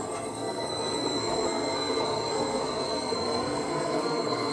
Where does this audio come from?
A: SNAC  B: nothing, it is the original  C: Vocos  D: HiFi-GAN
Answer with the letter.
A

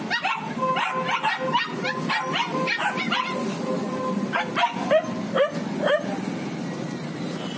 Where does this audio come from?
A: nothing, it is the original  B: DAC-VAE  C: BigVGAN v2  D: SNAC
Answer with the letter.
A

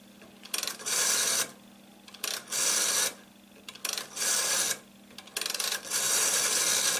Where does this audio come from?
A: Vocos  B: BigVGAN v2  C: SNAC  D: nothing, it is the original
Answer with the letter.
D